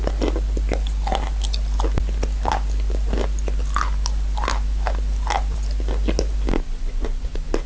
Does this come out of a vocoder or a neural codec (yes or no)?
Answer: no